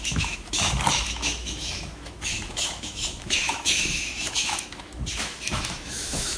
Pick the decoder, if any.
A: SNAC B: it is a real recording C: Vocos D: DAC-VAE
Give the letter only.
D